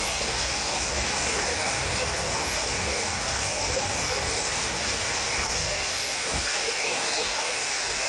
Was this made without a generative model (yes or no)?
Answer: no